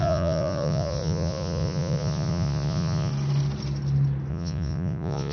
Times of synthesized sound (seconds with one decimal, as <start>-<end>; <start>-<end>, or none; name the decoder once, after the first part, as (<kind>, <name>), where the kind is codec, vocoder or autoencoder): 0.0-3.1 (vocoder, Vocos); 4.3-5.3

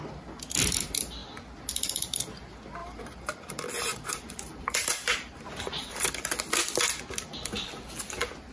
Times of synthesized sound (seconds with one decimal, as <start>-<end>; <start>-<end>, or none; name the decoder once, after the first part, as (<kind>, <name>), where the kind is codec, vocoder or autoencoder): 2.8-3.5 (vocoder, BigVGAN v2); 3.9-6.1

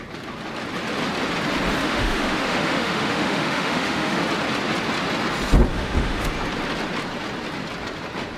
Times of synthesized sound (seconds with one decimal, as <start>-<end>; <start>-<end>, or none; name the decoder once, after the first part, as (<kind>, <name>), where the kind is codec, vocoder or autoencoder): 1.8-4.2 (autoencoder, DAC-VAE); 5.7-6.3

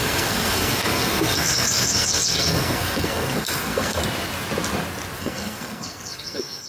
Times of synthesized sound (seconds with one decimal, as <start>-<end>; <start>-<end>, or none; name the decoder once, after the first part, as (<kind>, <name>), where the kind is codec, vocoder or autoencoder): 0.0-4.0 (codec, SNAC); 5.2-6.7

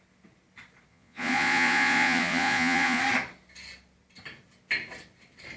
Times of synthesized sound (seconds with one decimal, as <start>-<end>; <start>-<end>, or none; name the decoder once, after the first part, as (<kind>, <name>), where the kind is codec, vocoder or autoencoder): 0.9-3.0 (vocoder, Vocos)